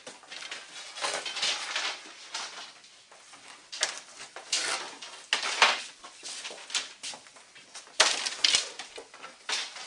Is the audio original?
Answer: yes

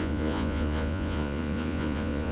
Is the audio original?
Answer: no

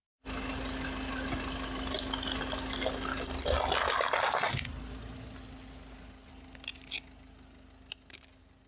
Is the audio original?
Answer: yes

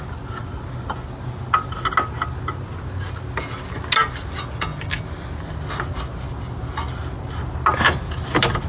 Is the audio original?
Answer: yes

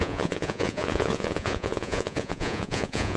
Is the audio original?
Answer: no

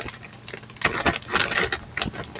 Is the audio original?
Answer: yes